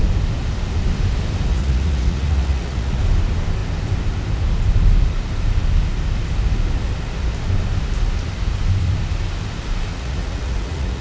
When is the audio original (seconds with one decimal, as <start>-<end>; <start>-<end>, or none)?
0.0-1.5; 3.0-9.9

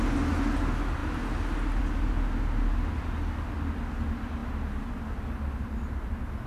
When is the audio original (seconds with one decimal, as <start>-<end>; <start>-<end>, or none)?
0.0-6.5

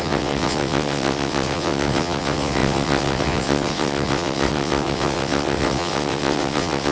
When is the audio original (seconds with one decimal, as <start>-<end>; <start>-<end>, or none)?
none

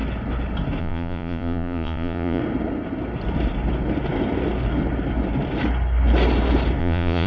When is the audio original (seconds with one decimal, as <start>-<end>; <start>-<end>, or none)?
0.0-0.8; 2.4-6.8

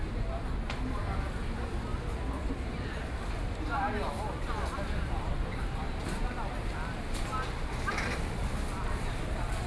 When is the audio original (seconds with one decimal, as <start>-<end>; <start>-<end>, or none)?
0.0-9.7

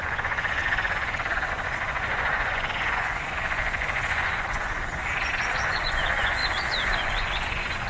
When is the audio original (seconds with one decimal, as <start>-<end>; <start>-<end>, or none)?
none